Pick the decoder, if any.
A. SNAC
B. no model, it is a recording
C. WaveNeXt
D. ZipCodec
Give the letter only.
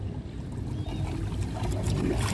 B